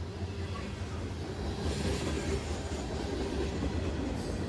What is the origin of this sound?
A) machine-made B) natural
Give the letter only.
B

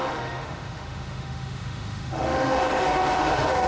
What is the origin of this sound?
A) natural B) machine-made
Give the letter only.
B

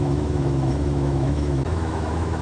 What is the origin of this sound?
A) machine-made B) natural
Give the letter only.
A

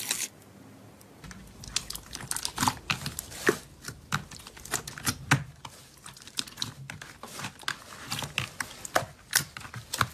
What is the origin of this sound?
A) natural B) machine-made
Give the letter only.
A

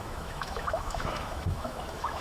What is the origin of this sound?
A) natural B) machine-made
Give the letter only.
B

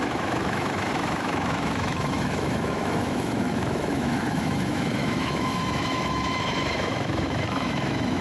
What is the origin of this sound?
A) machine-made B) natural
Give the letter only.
A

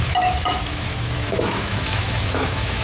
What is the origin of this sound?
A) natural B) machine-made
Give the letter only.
B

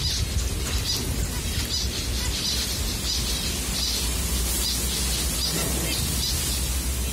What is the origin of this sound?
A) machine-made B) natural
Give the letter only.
B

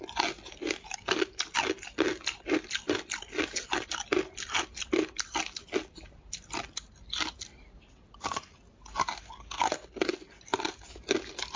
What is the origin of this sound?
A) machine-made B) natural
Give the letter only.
B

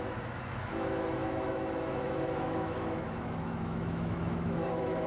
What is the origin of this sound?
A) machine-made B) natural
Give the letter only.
A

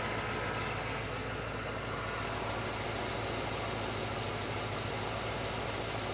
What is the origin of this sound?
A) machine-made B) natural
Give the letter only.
B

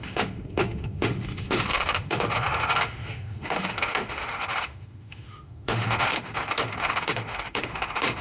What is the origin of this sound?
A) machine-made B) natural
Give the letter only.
A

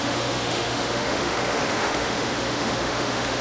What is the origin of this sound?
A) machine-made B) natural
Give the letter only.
A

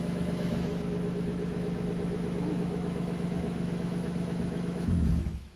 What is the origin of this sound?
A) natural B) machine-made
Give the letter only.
B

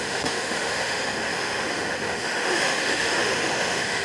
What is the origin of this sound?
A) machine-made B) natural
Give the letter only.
A